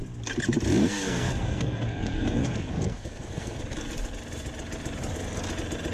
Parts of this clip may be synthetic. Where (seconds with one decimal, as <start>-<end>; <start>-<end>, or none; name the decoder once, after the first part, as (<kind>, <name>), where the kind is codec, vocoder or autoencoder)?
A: 0.8-3.6 (codec, SNAC)